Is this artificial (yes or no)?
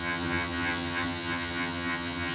yes